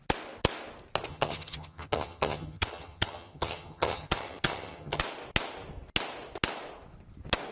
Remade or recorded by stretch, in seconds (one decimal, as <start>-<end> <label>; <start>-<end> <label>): 0.0-1.1 recorded; 1.1-5.0 remade; 5.0-7.5 recorded